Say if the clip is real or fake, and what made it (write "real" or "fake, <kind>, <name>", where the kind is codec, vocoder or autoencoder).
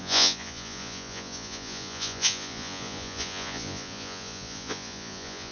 fake, vocoder, Vocos